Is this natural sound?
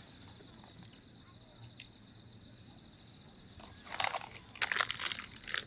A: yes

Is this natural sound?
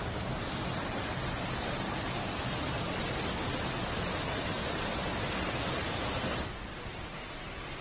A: yes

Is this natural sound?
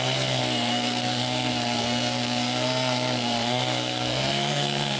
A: no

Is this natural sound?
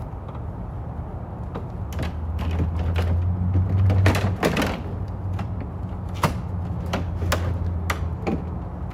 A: yes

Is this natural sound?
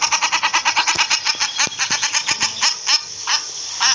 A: yes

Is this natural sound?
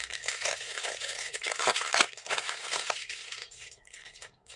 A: no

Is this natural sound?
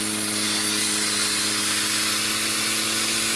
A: yes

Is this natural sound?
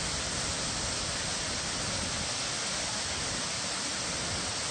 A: yes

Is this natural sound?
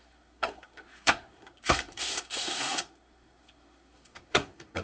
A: no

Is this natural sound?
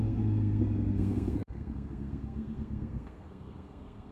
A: no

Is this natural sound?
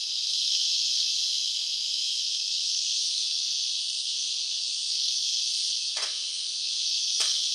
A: no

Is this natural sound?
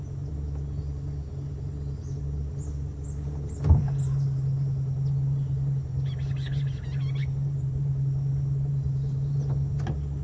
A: yes